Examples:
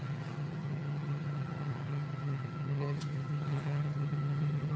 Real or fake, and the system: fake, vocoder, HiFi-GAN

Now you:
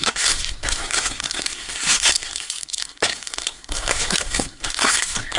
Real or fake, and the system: fake, codec, SNAC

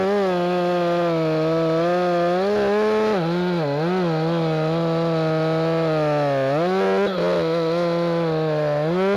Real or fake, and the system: real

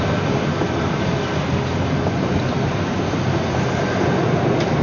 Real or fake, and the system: real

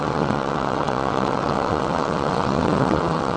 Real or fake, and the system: fake, vocoder, WaveNeXt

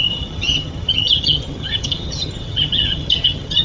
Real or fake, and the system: fake, vocoder, HiFi-GAN